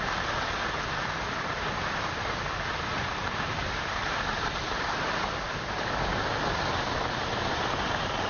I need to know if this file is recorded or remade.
recorded